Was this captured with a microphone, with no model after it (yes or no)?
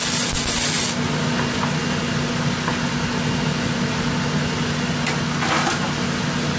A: yes